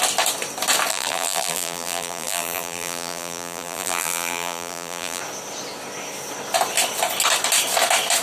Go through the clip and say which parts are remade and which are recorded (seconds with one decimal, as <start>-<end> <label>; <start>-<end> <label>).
0.0-0.9 recorded; 0.9-5.2 remade; 5.2-8.2 recorded